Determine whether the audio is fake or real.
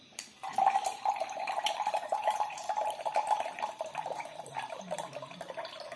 fake